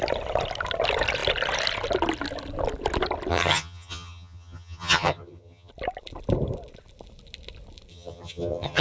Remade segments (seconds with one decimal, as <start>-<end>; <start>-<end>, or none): 3.3-5.7; 7.9-8.8